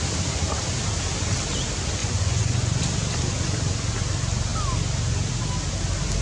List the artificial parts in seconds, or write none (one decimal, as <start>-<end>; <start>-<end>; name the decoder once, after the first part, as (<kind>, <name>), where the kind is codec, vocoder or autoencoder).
2.0-2.8 (vocoder, Vocos)

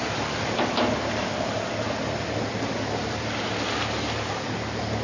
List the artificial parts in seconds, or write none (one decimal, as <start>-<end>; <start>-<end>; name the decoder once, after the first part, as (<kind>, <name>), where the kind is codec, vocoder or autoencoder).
none

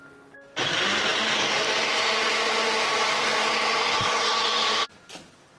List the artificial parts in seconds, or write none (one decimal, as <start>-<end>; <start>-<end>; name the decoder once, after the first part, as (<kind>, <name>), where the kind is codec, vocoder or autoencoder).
none